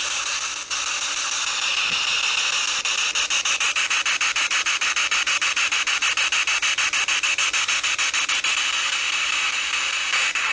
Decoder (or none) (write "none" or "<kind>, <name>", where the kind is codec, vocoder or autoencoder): none